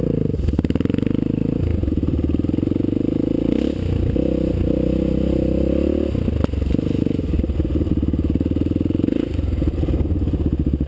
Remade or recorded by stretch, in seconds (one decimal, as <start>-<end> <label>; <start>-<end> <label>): 0.0-10.9 recorded

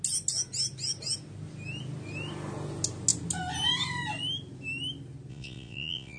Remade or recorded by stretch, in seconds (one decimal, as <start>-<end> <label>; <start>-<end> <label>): 0.0-5.3 recorded; 5.3-6.2 remade

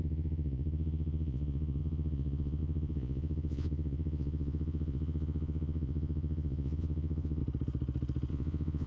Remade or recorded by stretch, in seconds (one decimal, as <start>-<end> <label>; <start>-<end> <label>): 0.0-7.4 remade; 7.4-8.3 recorded; 8.3-8.9 remade

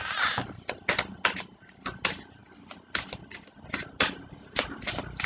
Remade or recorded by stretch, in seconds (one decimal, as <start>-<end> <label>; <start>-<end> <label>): 0.0-5.3 recorded

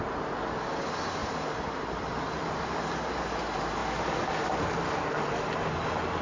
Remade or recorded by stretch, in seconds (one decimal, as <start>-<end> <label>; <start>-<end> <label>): 0.0-6.2 recorded